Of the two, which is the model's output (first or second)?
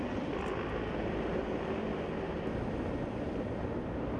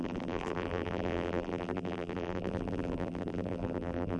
second